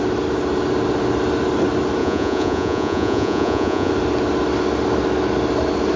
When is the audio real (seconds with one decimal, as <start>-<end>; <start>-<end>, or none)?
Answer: 0.0-2.0; 3.9-6.0